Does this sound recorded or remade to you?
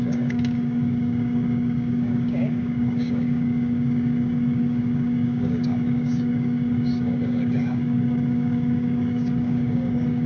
remade